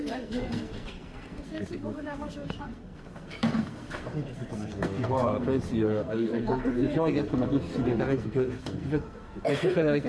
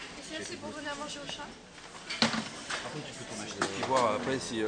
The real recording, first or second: second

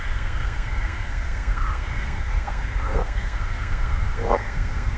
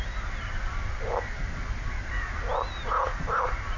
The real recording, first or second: second